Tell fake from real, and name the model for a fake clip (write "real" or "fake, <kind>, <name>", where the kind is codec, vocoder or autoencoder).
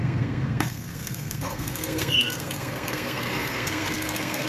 fake, codec, SNAC